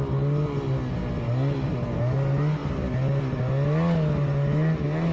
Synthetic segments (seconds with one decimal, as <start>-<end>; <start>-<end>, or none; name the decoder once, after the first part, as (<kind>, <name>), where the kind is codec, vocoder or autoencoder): none